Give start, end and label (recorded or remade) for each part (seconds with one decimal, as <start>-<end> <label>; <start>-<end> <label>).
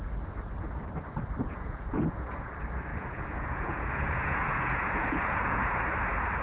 0.0-1.4 recorded; 1.4-2.5 remade; 2.5-2.9 recorded; 2.9-5.8 remade; 5.8-6.4 recorded